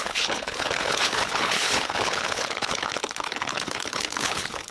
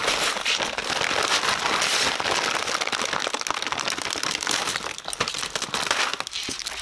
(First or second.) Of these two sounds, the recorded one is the second